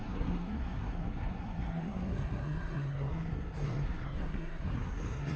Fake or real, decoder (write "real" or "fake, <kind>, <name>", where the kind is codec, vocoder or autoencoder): fake, codec, SNAC